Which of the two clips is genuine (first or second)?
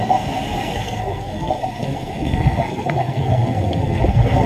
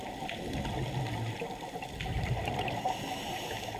second